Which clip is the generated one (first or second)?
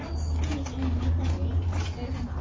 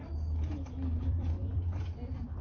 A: second